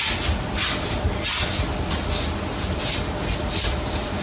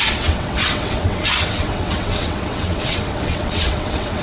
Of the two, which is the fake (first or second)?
second